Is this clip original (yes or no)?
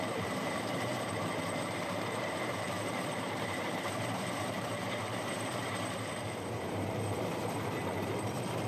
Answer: no